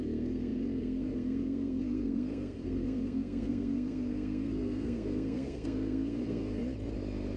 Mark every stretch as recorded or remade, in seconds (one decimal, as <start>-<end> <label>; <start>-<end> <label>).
0.0-6.6 remade; 6.6-7.4 recorded